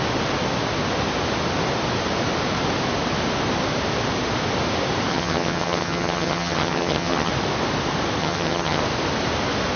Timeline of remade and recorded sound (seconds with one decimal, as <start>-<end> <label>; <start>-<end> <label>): 0.0-5.1 recorded; 5.1-7.3 remade; 7.3-8.2 recorded; 8.2-8.8 remade; 8.8-9.8 recorded